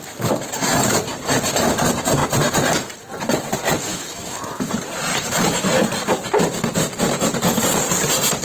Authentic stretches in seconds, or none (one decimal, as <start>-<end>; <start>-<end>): 0.0-3.9; 4.7-8.4